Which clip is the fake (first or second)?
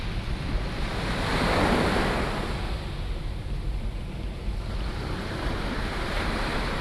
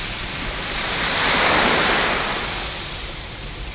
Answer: second